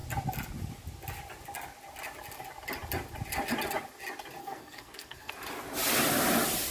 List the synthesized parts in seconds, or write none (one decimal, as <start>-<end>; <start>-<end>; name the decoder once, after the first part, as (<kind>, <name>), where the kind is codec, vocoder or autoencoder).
4.4-5.3 (codec, SNAC)